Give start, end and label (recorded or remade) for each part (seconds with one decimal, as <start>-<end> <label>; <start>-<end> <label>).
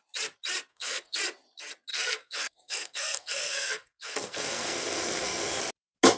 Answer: 0.0-0.7 recorded; 0.7-1.2 remade; 1.2-1.9 recorded; 1.9-5.6 remade; 5.6-6.2 recorded